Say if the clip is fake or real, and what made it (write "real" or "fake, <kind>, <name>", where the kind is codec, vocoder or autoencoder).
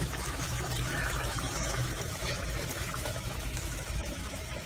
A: fake, autoencoder, DAC-VAE